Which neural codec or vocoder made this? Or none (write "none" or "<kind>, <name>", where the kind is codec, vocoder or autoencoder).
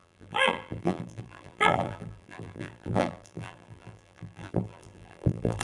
vocoder, BigVGAN v2